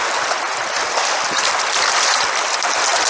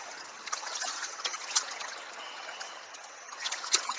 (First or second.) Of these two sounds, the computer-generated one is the second